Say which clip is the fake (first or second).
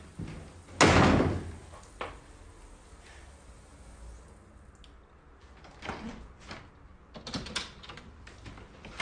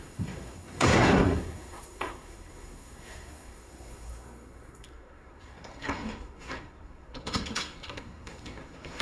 second